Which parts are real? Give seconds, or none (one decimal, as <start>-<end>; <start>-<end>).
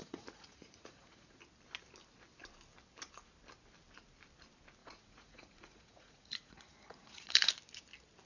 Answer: 1.4-4.8; 7.5-8.3